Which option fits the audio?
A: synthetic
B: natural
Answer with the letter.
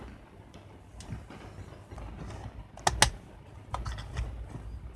B